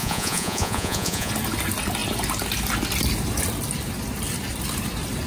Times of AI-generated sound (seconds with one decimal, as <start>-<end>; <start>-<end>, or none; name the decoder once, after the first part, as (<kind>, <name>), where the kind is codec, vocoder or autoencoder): 0.0-1.3 (vocoder, Vocos)